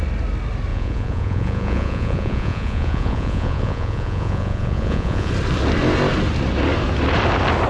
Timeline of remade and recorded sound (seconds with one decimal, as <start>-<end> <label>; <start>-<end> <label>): 0.0-0.7 recorded; 0.7-5.3 remade; 5.3-7.7 recorded